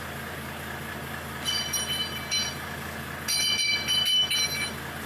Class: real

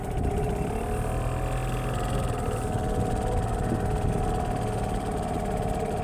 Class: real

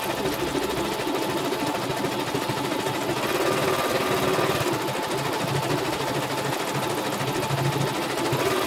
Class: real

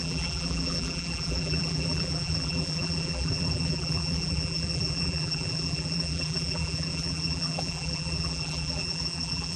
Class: fake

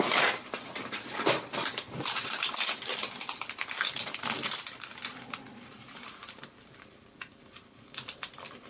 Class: fake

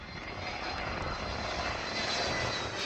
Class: real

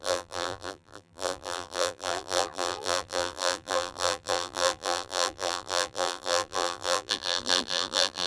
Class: fake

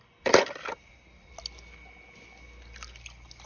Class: real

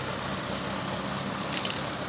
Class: real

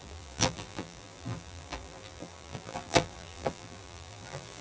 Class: fake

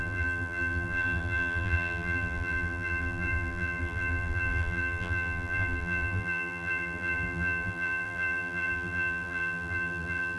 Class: fake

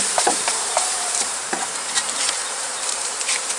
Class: fake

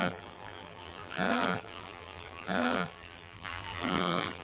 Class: fake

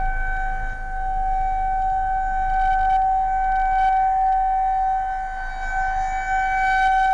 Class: real